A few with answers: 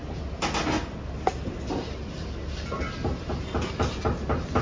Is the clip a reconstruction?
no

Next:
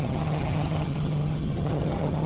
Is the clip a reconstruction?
yes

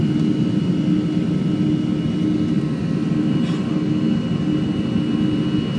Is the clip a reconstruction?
no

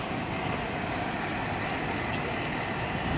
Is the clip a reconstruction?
no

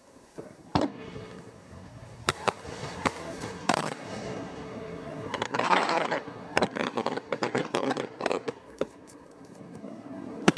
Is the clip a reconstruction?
yes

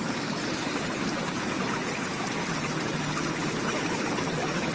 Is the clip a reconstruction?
yes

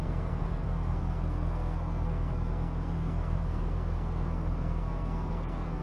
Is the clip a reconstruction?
yes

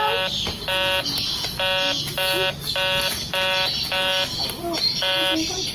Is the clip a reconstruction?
no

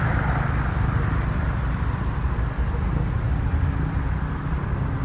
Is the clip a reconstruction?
no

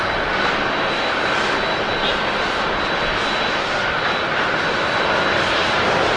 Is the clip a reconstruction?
yes